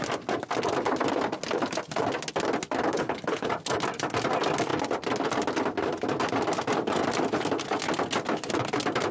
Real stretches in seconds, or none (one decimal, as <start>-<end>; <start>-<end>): 0.0-2.8; 3.5-9.1